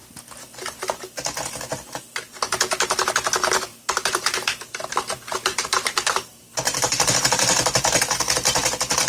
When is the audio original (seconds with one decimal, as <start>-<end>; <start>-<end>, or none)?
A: 0.0-3.7; 4.7-5.5; 8.2-9.1